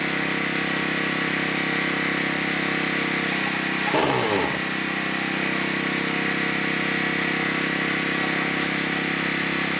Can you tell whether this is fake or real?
real